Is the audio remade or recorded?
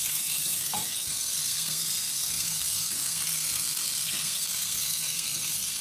remade